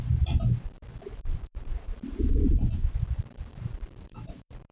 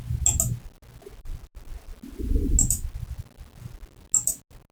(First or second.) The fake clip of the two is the first